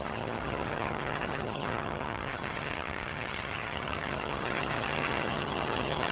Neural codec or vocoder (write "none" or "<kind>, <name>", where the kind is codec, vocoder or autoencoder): vocoder, HiFi-GAN